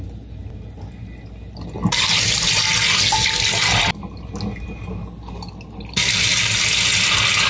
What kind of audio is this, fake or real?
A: real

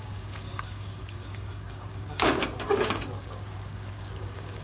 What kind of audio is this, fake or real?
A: fake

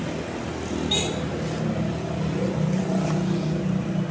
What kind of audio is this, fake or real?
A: real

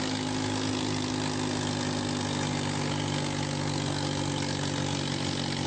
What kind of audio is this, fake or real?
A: real